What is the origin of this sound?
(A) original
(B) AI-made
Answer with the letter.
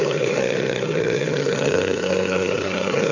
B